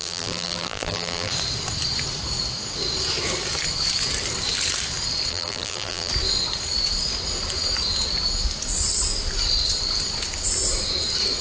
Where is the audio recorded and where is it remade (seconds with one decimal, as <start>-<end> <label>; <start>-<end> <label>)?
0.0-1.3 remade; 1.3-5.3 recorded; 5.3-6.1 remade; 6.1-11.4 recorded